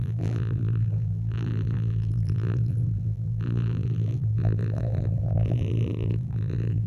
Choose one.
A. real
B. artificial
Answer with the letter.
B